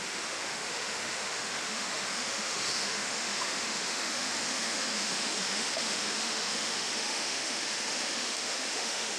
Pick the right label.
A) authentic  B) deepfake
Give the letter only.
B